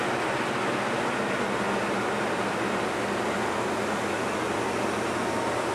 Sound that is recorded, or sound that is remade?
recorded